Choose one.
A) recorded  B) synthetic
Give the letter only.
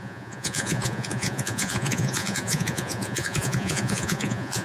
B